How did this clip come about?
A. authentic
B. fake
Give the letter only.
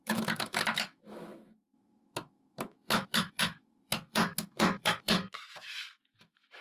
B